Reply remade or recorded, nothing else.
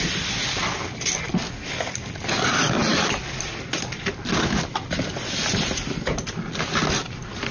recorded